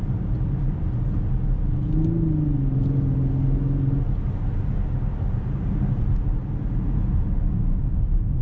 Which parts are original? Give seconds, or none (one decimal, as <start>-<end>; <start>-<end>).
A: 0.0-8.4